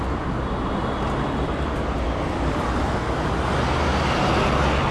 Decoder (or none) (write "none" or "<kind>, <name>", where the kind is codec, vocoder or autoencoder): none